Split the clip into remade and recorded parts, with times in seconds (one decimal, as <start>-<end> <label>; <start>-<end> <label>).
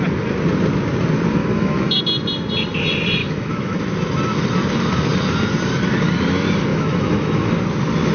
0.0-1.4 recorded; 1.4-2.0 remade; 2.0-3.2 recorded; 3.2-3.8 remade; 3.8-6.7 recorded; 6.7-7.5 remade; 7.5-8.1 recorded